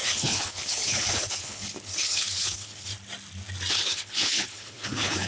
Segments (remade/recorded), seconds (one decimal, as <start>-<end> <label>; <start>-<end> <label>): 0.0-2.9 remade; 2.9-3.7 recorded; 3.7-5.3 remade

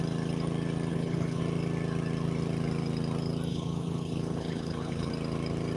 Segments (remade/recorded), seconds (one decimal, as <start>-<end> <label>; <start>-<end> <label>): 0.0-0.9 recorded; 0.9-1.4 remade; 1.4-3.5 recorded; 3.5-5.1 remade; 5.1-5.8 recorded

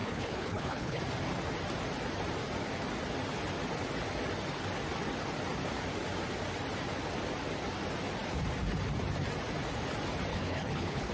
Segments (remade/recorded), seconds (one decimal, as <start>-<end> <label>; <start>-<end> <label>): 0.0-1.0 remade; 1.0-10.3 recorded; 10.3-11.1 remade

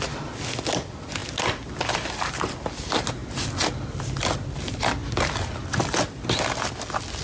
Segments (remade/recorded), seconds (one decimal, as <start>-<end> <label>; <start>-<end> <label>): 0.0-7.2 recorded

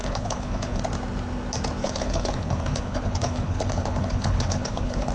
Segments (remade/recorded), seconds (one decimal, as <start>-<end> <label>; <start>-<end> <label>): 0.0-0.8 remade; 0.8-1.8 recorded; 1.8-5.1 remade

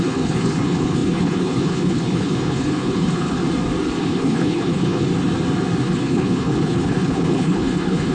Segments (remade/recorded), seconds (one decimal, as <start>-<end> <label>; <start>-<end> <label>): 0.0-3.4 remade; 3.4-4.0 recorded; 4.0-5.1 remade; 5.1-5.8 recorded; 5.8-8.1 remade